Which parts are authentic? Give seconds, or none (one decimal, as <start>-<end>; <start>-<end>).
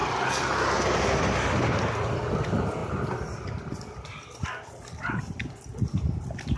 1.0-6.6